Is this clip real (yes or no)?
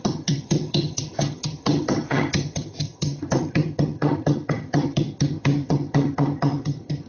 no